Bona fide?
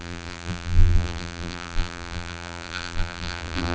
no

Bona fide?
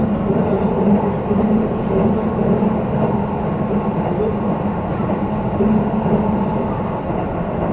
yes